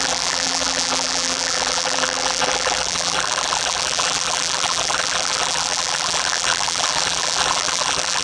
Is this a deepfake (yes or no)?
yes